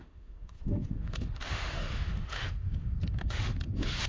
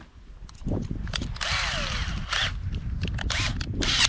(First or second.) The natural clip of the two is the second